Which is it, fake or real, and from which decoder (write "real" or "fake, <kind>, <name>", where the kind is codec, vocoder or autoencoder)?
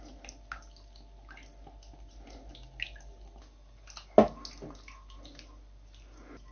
real